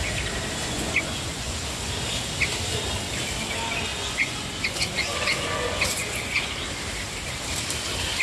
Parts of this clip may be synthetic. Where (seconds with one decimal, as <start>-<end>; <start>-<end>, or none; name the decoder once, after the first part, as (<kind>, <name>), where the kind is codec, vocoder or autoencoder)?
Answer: 0.6-1.9 (vocoder, Vocos); 3.9-6.5